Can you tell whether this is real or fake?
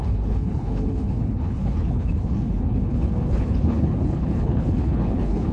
fake